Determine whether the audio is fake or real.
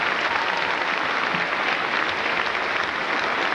real